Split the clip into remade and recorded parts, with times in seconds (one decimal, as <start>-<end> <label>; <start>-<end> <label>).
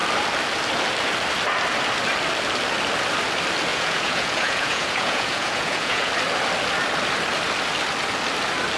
0.0-3.7 recorded; 3.7-6.1 remade; 6.1-8.8 recorded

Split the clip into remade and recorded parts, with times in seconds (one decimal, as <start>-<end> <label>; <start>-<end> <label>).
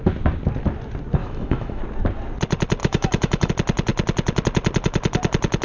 0.0-1.2 recorded; 1.2-1.8 remade; 1.8-2.8 recorded; 2.8-3.5 remade; 3.5-5.6 recorded